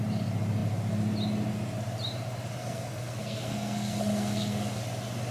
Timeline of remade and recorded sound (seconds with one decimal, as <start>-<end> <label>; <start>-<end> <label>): 0.0-2.6 recorded; 2.6-4.8 remade; 4.8-5.3 recorded